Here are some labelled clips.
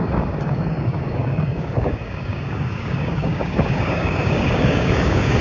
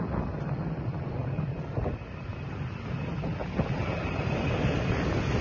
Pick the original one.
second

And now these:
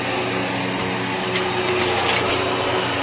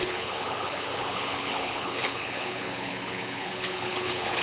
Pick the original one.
first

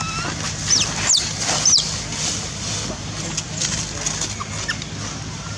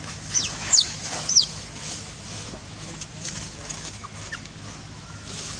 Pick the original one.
first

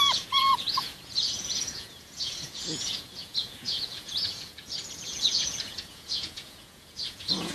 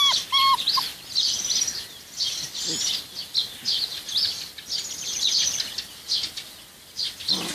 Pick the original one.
second